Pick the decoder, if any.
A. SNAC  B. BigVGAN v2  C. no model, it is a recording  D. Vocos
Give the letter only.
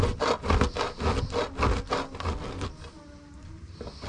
C